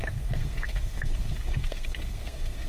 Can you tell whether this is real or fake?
fake